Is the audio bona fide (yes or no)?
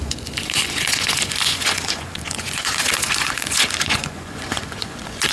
no